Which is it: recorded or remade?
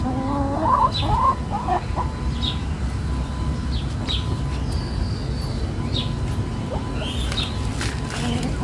recorded